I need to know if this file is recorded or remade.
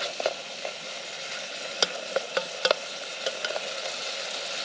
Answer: recorded